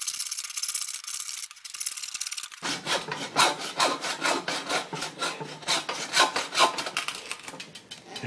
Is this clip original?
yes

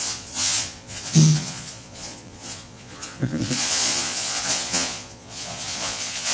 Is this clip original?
no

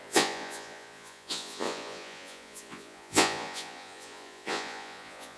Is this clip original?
no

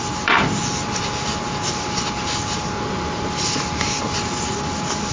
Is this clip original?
yes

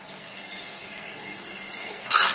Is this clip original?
no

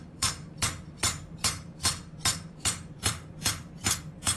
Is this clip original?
no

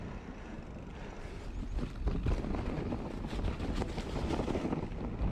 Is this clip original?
yes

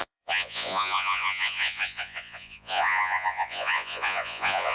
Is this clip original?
no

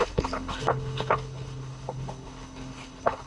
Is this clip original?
no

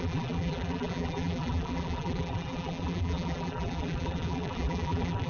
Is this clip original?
no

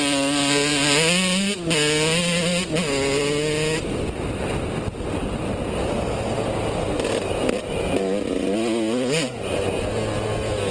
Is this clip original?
yes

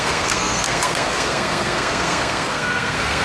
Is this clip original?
no